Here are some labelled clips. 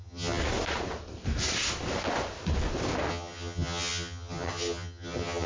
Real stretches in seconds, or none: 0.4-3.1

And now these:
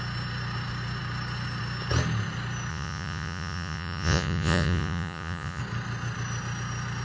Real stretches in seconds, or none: 0.0-2.7; 5.6-7.0

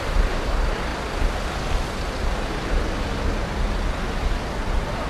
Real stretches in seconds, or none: 0.0-5.1

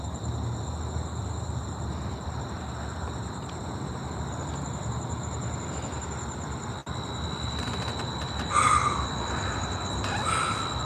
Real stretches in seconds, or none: 0.0-10.8